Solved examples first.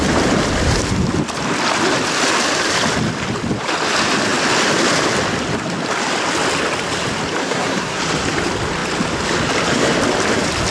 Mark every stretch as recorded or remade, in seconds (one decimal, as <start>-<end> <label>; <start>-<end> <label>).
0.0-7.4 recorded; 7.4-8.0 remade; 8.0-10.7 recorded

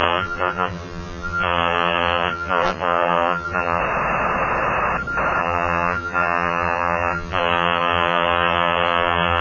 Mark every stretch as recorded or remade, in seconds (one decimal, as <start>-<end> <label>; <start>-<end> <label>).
0.0-3.8 remade; 3.8-5.4 recorded; 5.4-9.4 remade

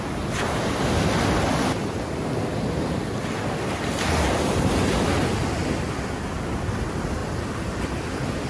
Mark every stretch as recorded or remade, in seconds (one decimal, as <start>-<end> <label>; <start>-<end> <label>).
0.0-7.2 recorded; 7.2-7.8 remade; 7.8-8.5 recorded

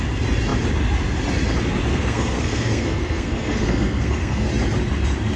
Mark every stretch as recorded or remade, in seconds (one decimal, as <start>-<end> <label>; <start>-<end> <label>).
0.0-1.9 recorded; 1.9-4.5 remade; 4.5-5.4 recorded